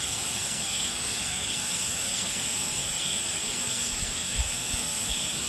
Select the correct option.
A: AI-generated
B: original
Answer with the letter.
A